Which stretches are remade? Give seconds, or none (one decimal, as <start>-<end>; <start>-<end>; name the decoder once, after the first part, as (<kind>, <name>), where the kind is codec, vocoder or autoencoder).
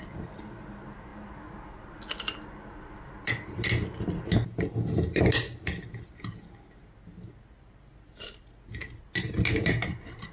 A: none